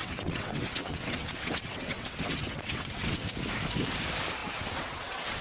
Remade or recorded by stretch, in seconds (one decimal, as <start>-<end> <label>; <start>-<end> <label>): 0.0-3.2 remade; 3.2-4.4 recorded; 4.4-5.4 remade